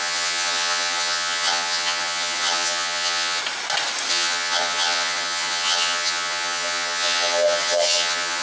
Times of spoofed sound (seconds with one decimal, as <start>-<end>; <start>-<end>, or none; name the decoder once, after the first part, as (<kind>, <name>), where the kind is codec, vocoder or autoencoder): 0.0-3.4 (vocoder, HiFi-GAN); 4.1-8.4